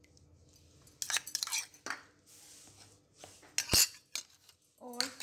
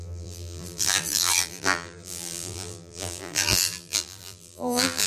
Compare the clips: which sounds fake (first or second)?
second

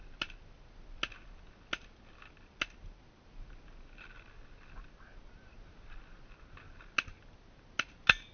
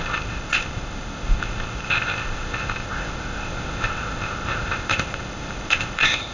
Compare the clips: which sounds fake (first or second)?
second